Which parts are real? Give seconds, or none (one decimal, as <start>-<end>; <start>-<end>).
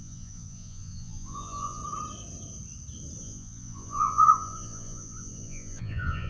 1.8-3.2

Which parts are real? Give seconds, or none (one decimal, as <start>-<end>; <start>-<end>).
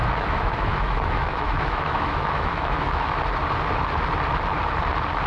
3.2-5.3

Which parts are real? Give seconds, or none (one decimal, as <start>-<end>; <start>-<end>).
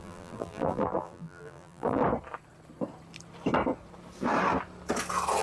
2.0-5.4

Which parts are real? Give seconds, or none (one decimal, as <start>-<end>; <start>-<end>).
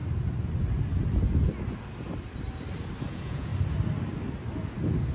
0.0-3.1; 3.5-5.1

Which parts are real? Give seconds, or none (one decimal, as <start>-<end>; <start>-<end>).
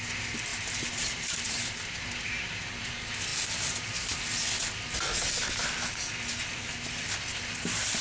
0.0-0.5; 2.9-8.0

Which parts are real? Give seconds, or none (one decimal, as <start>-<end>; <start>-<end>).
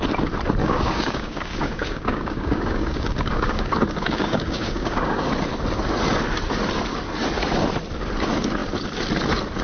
0.0-0.6; 5.2-9.6